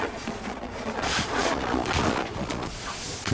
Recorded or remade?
remade